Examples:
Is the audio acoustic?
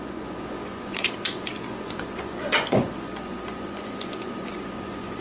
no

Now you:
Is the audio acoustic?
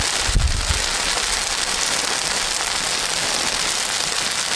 yes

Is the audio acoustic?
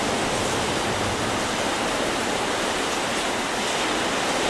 yes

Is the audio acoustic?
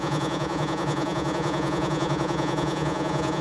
no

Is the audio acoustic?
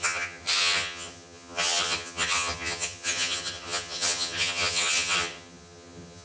no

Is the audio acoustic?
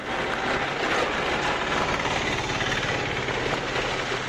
yes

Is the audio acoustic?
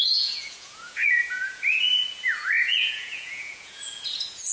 no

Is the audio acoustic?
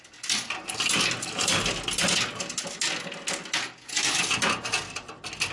yes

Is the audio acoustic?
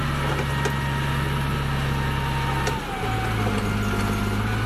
yes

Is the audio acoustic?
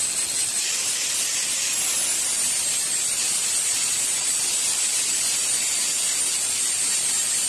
yes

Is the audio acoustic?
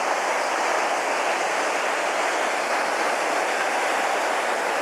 yes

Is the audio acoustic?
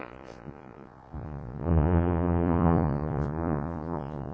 no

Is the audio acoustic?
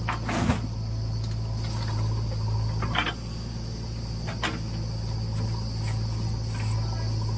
yes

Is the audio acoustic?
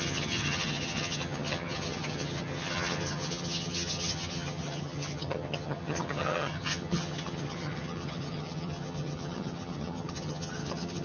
no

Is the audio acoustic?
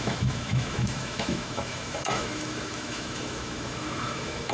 no